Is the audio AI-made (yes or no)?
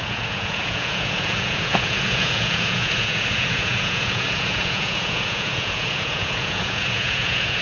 yes